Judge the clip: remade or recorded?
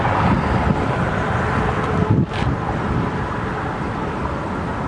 recorded